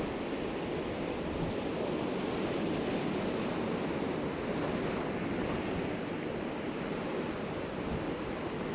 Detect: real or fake real